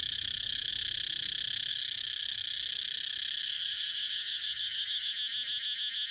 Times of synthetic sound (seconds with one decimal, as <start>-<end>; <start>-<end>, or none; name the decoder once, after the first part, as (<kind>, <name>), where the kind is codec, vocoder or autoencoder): 0.0-0.7 (codec, DAC); 1.7-5.1